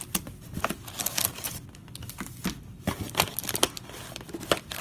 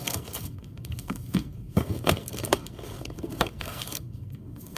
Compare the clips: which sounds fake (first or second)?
second